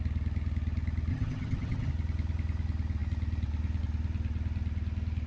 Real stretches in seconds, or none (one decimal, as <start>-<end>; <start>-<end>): 0.0-1.1; 1.9-5.3